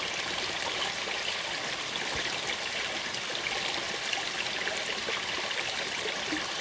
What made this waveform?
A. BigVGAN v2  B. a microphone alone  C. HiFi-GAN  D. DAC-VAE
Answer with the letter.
B